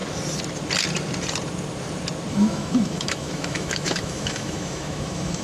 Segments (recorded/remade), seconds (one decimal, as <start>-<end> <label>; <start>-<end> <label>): 0.0-2.3 recorded; 2.3-5.4 remade